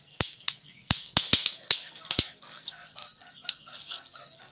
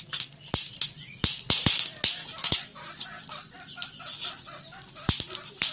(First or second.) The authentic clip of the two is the second